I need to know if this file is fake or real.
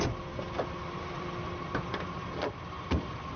fake